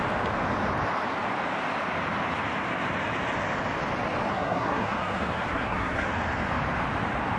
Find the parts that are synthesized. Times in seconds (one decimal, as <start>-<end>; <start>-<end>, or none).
4.3-6.1